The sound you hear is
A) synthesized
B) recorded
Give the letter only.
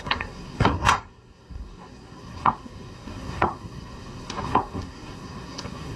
A